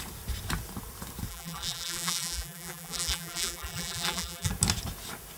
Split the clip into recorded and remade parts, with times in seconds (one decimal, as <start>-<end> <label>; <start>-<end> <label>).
0.0-1.3 recorded; 1.3-4.5 remade; 4.5-5.4 recorded